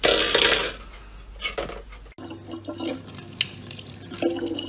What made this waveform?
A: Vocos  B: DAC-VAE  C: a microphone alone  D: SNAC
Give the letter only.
C